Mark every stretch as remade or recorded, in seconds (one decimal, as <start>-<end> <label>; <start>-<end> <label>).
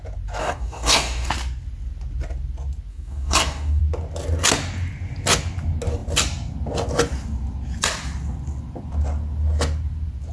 0.0-0.4 recorded; 0.4-1.3 remade; 1.3-2.9 recorded; 2.9-3.8 remade; 3.8-10.3 recorded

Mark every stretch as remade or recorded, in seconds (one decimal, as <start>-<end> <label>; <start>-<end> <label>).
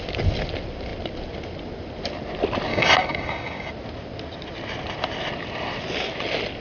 0.0-2.7 recorded; 2.7-3.7 remade; 3.7-6.6 recorded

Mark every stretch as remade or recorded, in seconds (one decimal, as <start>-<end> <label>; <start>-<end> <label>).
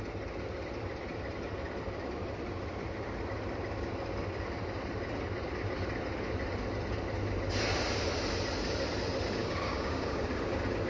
0.0-9.4 recorded; 9.4-10.2 remade; 10.2-10.9 recorded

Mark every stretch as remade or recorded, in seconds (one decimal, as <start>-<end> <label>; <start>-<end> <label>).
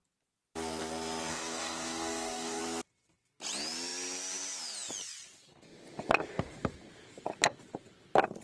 0.0-1.3 recorded; 1.3-2.6 remade; 2.6-8.4 recorded